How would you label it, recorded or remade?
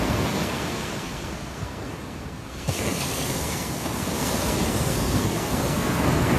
remade